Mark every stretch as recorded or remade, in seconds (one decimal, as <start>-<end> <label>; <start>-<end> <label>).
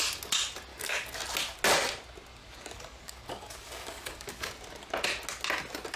0.0-0.7 recorded; 0.7-1.2 remade; 1.2-2.4 recorded; 2.4-4.5 remade; 4.5-6.0 recorded